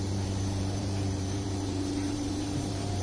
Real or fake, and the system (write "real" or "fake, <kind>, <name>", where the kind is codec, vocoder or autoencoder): fake, vocoder, BigVGAN v2